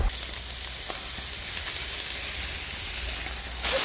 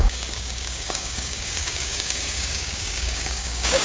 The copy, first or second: second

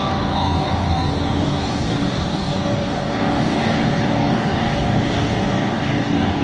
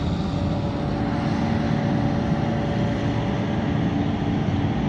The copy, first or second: first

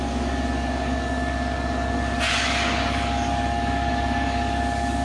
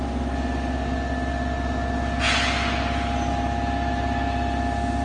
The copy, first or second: first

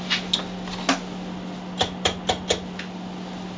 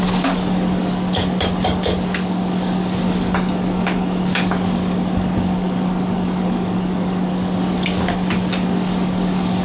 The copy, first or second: second